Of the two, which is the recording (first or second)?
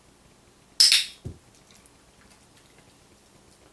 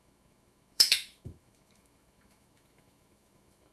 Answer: first